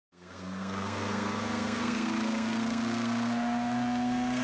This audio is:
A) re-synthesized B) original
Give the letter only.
A